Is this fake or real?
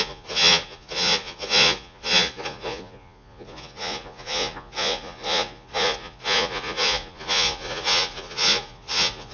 fake